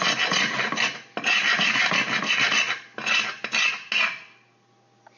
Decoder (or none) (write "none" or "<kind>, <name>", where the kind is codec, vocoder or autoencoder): none